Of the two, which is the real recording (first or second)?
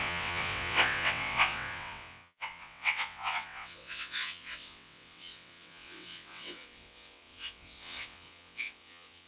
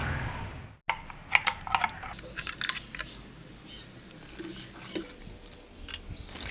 second